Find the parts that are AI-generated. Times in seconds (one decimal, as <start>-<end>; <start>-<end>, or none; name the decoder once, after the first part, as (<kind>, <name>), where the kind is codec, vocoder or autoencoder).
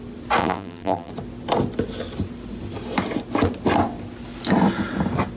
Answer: 0.4-1.1 (vocoder, BigVGAN v2)